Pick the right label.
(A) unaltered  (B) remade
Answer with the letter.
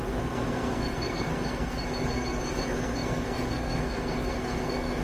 B